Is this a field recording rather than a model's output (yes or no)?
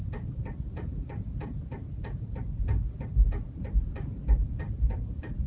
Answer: no